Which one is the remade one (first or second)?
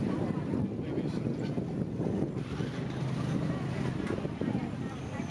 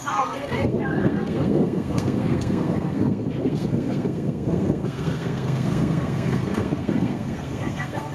second